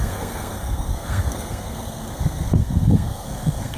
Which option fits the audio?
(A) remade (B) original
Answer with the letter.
A